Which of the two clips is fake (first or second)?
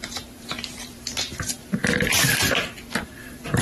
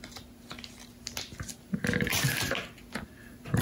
first